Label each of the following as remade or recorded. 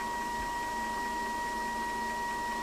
recorded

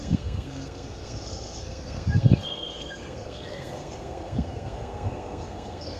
remade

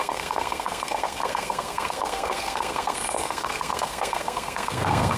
remade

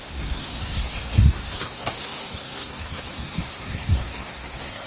remade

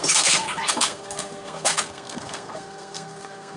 remade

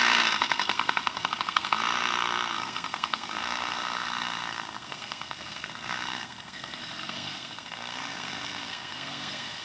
remade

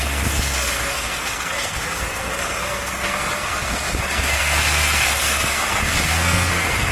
remade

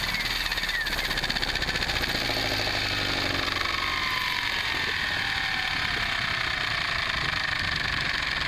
recorded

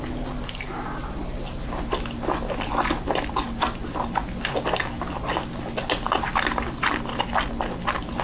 recorded